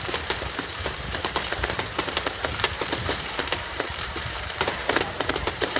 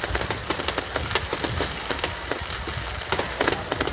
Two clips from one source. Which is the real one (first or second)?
second